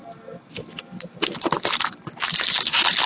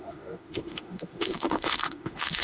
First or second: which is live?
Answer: first